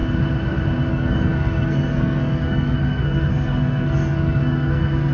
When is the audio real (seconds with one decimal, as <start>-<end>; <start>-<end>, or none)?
0.0-0.9